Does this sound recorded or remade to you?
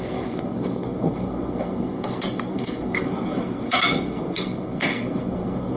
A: remade